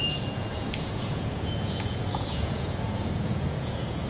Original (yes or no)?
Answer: no